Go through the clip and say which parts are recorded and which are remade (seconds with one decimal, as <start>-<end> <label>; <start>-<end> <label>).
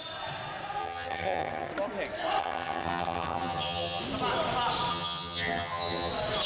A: 0.0-0.8 recorded; 0.8-1.7 remade; 1.7-2.4 recorded; 2.4-4.0 remade; 4.0-4.9 recorded; 4.9-6.1 remade; 6.1-6.5 recorded